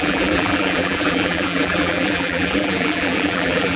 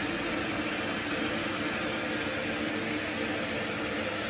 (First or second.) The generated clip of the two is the first